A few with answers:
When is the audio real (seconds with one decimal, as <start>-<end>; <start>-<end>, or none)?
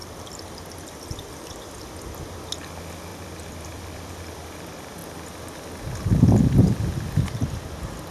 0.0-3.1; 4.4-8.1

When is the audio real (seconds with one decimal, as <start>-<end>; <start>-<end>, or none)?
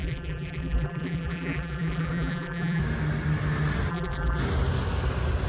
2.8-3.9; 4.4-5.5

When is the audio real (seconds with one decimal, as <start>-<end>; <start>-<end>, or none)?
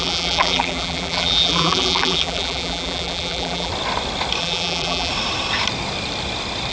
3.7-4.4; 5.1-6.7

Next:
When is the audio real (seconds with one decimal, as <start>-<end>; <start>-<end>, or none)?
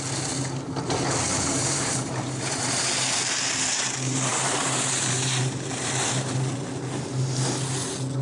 0.0-1.3; 2.9-4.3; 5.9-8.2